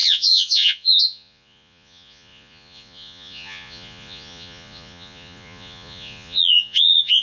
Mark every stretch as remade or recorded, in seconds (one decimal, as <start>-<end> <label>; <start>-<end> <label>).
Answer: 0.0-7.2 remade